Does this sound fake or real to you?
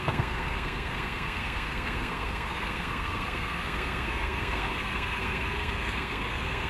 fake